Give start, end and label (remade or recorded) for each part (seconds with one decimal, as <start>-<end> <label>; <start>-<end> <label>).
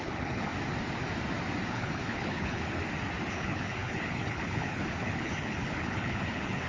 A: 0.0-0.5 remade; 0.5-1.7 recorded; 1.7-2.8 remade; 2.8-3.3 recorded; 3.3-6.7 remade